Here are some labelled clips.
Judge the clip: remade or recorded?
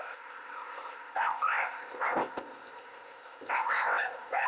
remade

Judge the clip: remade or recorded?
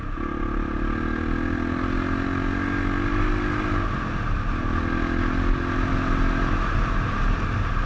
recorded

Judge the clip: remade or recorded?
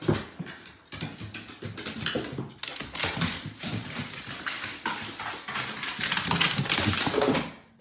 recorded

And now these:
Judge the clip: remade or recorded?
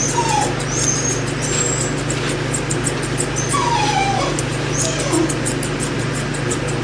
recorded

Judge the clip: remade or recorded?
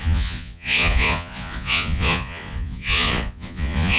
remade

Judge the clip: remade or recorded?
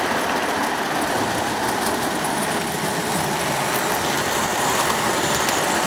recorded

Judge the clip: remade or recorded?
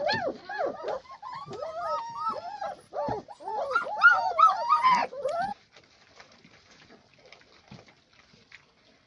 recorded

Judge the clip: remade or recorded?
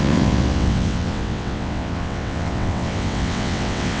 remade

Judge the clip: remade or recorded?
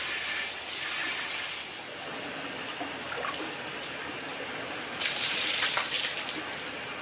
recorded